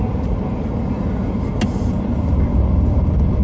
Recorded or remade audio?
recorded